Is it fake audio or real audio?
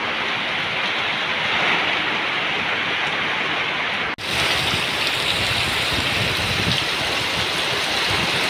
real